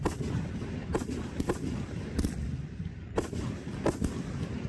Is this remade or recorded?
recorded